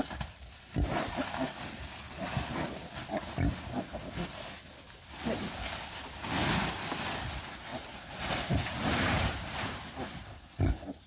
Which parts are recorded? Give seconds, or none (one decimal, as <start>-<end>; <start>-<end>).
0.0-7.7; 10.6-11.1